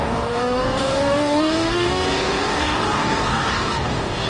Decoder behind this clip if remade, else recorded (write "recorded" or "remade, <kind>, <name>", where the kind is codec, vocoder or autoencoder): remade, codec, DAC